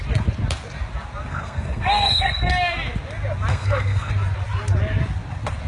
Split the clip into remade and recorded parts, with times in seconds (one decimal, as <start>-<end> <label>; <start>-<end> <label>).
0.0-1.3 recorded; 1.3-2.5 remade; 2.5-3.5 recorded; 3.5-4.1 remade; 4.1-5.7 recorded